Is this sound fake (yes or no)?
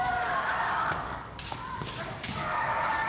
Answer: yes